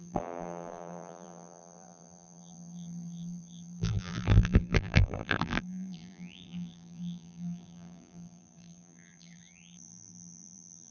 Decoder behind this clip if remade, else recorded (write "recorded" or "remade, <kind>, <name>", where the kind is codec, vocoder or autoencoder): remade, vocoder, BigVGAN v2